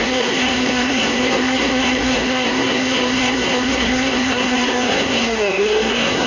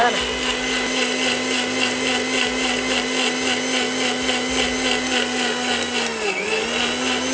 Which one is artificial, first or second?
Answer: first